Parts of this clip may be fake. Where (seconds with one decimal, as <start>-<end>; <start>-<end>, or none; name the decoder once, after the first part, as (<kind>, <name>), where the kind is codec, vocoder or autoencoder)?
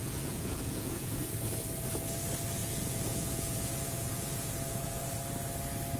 0.0-1.3 (vocoder, Vocos); 2.6-5.1